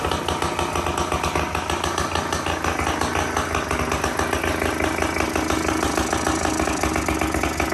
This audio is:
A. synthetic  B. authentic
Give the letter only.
B